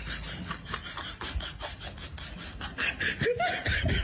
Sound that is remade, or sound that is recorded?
recorded